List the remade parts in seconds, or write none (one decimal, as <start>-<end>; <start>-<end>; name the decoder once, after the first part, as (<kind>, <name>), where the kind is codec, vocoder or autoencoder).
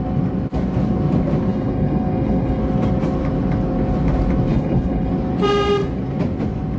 1.5-2.6 (codec, HILCodec); 4.5-5.1